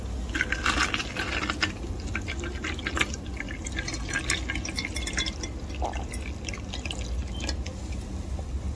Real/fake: real